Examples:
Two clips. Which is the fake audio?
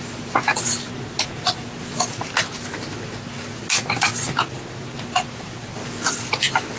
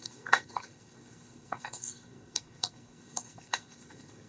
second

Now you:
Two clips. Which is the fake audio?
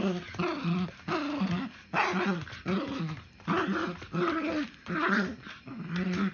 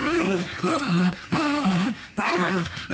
second